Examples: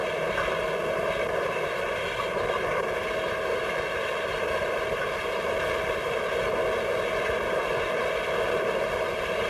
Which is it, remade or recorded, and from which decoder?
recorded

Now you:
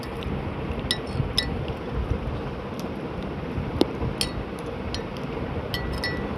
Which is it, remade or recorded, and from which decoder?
recorded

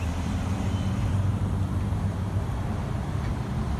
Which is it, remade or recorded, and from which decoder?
remade, vocoder, BigVGAN v2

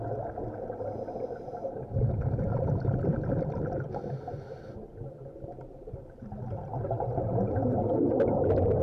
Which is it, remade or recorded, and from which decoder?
recorded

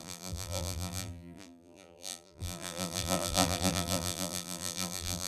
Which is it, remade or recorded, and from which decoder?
remade, vocoder, BigVGAN v2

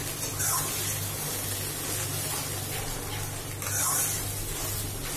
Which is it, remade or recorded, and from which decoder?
recorded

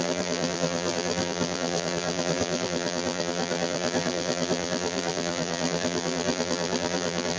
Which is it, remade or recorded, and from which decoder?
remade, vocoder, BigVGAN v2